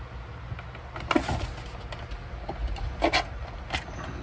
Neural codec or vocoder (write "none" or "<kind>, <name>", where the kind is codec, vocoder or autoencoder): none